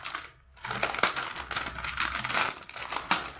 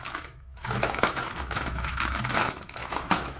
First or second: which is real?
first